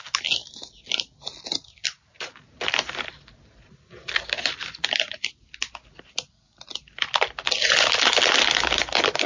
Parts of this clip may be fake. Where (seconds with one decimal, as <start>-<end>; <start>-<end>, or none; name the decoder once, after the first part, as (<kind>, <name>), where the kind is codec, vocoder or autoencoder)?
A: none